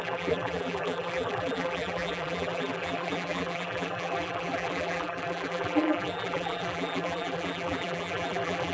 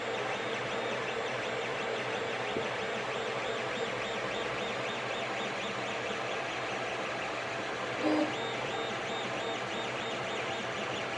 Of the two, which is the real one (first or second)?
second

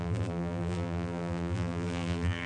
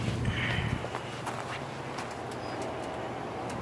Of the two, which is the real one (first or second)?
second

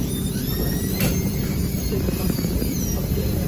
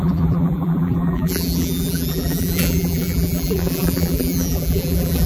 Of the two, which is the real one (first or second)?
first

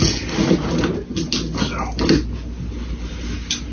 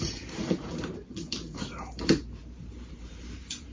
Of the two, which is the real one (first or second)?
first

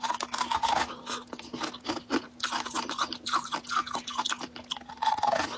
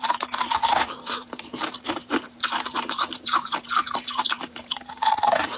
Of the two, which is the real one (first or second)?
first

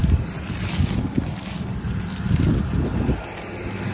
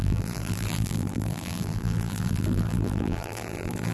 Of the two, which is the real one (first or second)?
first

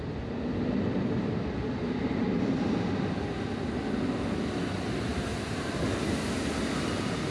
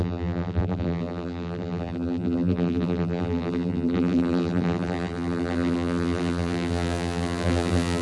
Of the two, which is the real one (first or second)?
first